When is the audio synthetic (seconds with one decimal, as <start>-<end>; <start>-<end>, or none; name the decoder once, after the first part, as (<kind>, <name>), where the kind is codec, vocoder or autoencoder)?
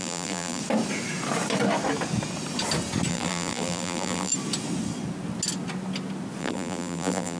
0.0-0.6 (vocoder, BigVGAN v2); 3.1-4.3; 6.4-7.4